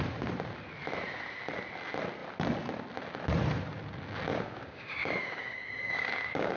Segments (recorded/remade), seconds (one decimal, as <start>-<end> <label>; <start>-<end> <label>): 0.0-4.3 recorded; 4.3-6.6 remade